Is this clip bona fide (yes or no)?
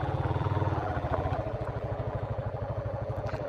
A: no